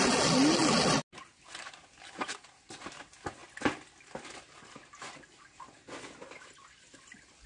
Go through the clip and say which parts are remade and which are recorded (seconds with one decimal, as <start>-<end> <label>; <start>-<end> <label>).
0.0-7.5 recorded